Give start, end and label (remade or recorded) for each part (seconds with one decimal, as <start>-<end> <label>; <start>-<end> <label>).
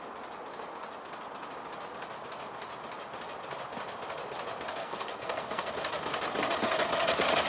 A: 0.0-4.8 recorded; 4.8-5.7 remade; 5.7-7.5 recorded